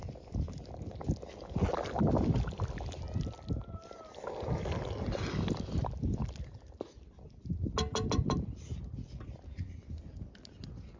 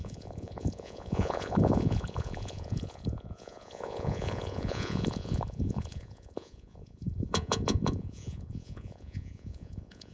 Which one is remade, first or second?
second